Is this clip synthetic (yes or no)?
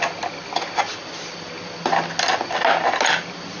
no